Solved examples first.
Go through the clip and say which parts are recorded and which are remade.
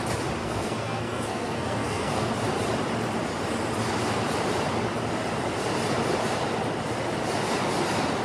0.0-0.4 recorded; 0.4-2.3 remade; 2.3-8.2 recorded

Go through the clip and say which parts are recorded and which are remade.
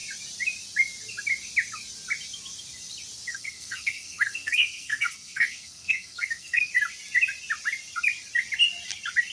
0.0-3.3 recorded; 3.3-6.7 remade; 6.7-9.3 recorded